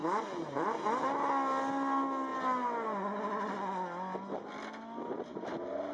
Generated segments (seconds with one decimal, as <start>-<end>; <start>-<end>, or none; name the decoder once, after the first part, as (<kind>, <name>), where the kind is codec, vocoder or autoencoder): none